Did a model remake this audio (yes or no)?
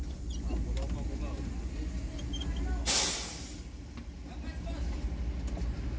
no